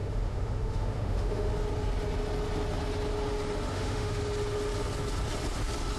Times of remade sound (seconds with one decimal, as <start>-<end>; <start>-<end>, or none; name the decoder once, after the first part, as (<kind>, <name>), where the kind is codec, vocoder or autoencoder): 0.0-1.5 (autoencoder, DAC-VAE); 3.7-4.2